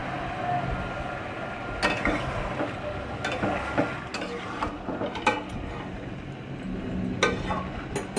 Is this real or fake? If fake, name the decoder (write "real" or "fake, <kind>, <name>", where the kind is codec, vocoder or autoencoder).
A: real